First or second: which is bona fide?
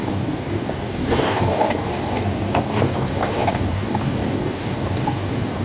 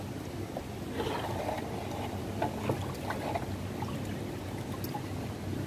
second